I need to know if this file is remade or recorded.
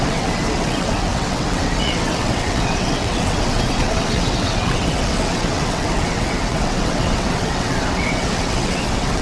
remade